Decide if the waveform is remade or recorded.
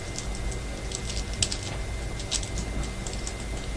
recorded